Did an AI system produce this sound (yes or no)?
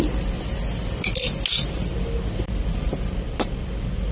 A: no